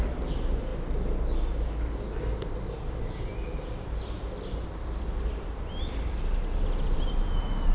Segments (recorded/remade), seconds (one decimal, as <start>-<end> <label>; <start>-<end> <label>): 0.0-7.7 recorded